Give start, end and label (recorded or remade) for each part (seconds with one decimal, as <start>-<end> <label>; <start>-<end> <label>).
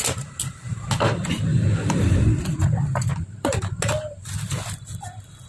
0.0-1.5 recorded; 1.5-2.2 remade; 2.2-3.1 recorded; 3.1-3.8 remade; 3.8-5.5 recorded